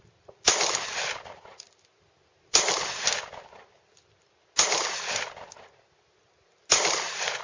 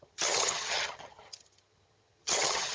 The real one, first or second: first